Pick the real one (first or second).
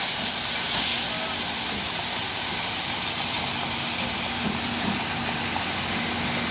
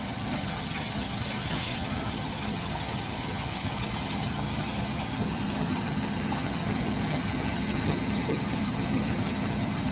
first